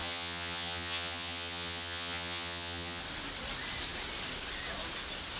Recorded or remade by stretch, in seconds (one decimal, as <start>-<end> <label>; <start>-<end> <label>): 0.0-3.0 remade; 3.0-5.4 recorded